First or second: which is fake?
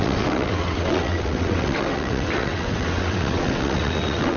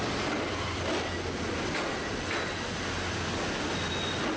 first